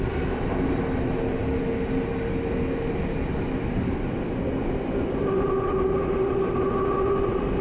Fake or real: real